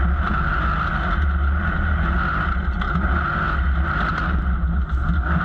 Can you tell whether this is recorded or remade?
recorded